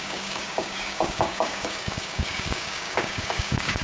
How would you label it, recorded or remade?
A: remade